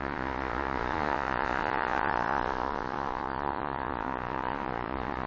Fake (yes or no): yes